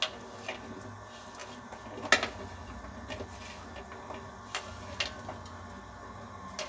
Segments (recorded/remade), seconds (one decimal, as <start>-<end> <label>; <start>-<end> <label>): 0.0-6.7 recorded